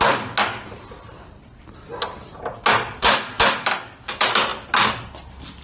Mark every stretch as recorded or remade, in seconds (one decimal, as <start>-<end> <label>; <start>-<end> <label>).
0.0-5.6 recorded